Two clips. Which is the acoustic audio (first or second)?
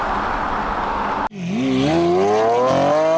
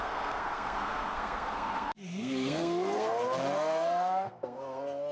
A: first